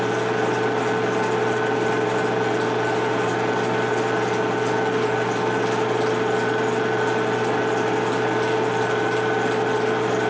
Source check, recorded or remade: recorded